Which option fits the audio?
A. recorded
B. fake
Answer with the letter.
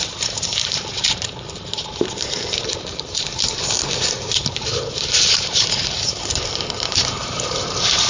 B